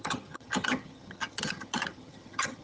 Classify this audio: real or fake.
fake